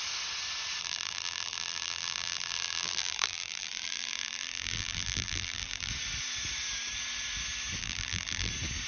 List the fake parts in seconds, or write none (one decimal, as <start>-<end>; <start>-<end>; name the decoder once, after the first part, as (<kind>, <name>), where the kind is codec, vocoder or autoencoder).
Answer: 0.8-5.9 (vocoder, BigVGAN v2); 7.8-8.5